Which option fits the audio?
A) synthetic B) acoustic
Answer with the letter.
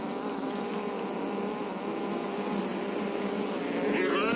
B